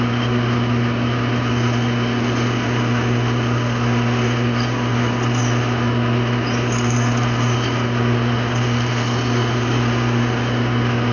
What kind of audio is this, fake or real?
real